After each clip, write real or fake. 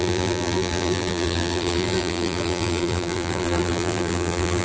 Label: fake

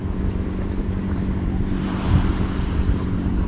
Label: fake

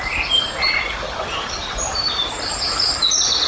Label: fake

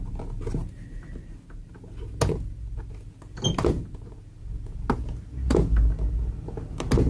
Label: real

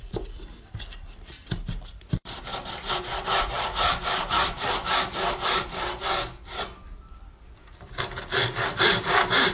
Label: fake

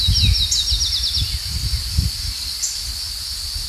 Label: real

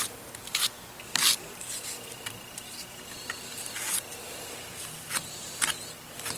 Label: real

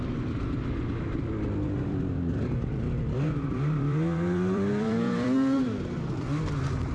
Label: fake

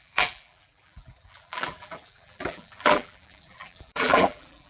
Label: fake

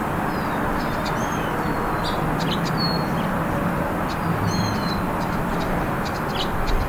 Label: fake